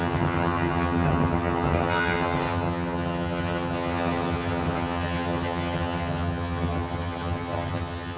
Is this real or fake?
fake